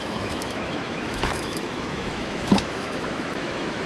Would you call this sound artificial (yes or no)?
yes